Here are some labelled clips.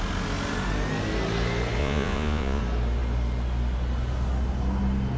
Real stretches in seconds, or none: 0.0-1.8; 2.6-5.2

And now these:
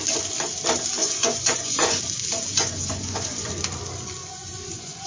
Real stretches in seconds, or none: 0.0-1.0; 2.0-2.5; 3.5-4.2